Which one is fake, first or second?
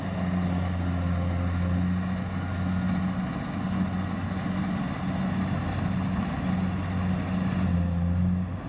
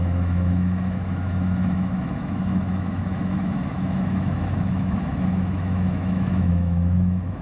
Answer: second